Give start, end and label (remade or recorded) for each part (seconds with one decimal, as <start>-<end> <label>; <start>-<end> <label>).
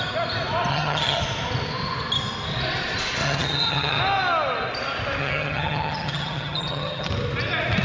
0.0-0.7 recorded; 0.7-1.2 remade; 1.2-3.2 recorded; 3.2-4.0 remade; 4.0-5.2 recorded; 5.2-7.1 remade; 7.1-7.8 recorded